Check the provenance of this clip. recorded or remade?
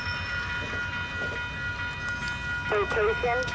recorded